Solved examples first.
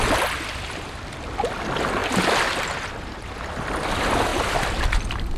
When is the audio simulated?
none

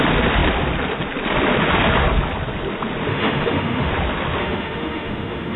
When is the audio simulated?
3.1-3.9; 4.4-5.6

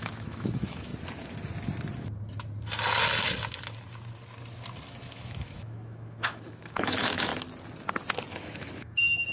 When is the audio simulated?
0.0-0.9; 5.1-7.3; 8.3-9.3

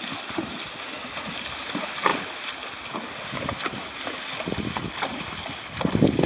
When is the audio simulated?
none

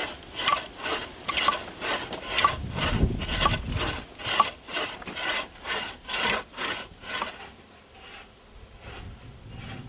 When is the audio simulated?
none

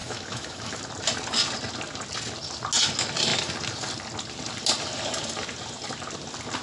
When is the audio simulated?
0.0-0.8